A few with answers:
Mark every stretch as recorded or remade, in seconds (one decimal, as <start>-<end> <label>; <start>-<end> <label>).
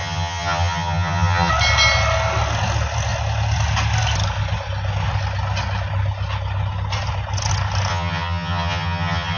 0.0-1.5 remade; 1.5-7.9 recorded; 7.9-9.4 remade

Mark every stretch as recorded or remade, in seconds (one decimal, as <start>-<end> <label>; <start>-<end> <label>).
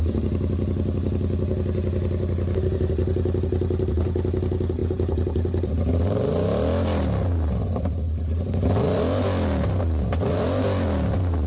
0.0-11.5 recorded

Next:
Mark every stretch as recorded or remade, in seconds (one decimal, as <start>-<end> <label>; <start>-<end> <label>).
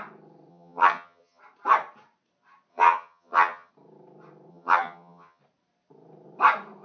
0.0-0.5 recorded; 0.5-1.4 remade; 1.4-2.7 recorded; 2.7-3.7 remade; 3.7-4.5 recorded; 4.5-5.4 remade; 5.4-6.8 recorded